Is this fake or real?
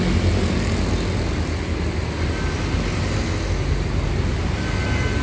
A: real